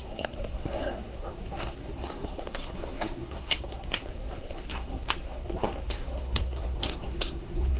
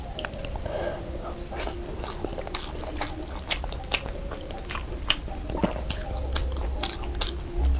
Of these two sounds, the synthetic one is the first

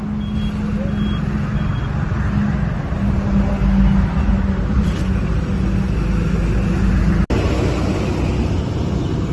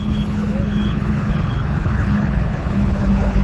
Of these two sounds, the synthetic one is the second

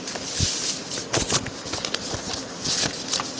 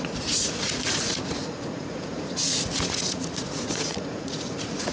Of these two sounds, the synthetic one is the second